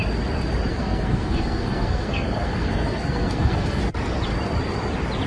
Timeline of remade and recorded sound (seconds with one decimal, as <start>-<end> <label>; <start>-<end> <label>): 0.0-0.7 recorded; 0.7-3.8 remade; 3.8-5.3 recorded